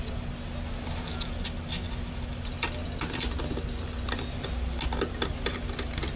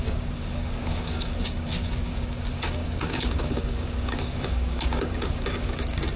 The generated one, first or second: second